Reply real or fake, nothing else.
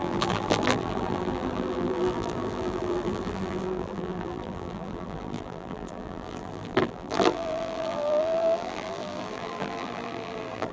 fake